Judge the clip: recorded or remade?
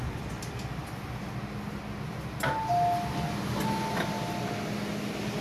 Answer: recorded